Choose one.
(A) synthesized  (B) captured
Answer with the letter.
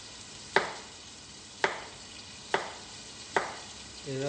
B